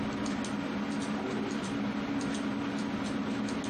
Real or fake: real